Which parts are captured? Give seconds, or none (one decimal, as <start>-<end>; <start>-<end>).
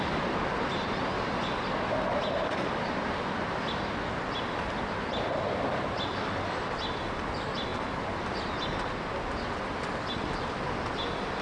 0.0-11.4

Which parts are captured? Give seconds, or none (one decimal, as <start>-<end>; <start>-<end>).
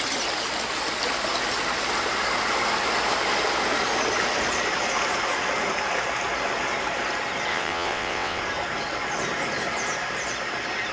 0.0-7.5; 8.4-10.9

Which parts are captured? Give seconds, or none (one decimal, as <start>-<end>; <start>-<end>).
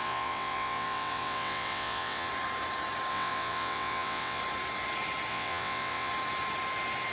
2.3-3.1; 4.4-5.3; 6.1-7.1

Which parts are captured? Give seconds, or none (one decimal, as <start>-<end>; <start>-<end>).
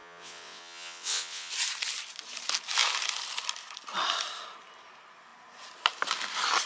1.5-6.7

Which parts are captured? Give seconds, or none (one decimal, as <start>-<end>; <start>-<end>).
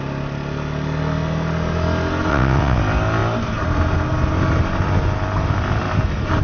0.0-2.3; 2.8-6.4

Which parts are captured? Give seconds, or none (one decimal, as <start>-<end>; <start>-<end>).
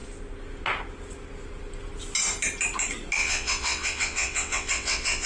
0.0-3.2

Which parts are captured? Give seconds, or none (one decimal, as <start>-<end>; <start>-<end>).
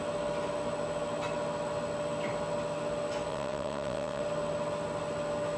0.0-3.3; 4.2-5.6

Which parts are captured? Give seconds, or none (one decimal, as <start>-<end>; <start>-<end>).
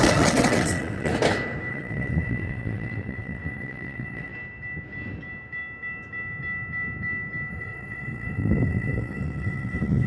1.1-1.7; 4.3-7.5